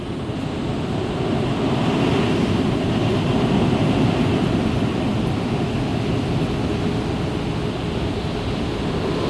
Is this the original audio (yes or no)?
yes